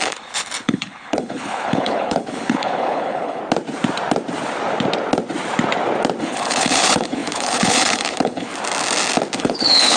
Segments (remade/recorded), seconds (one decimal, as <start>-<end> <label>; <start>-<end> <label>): 0.0-3.4 remade; 3.4-6.2 recorded; 6.2-8.5 remade; 8.5-9.4 recorded; 9.4-10.0 remade